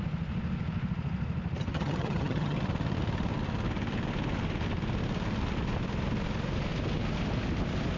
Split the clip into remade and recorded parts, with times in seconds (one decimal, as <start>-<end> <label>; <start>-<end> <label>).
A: 0.0-1.7 recorded; 1.7-2.6 remade; 2.6-8.0 recorded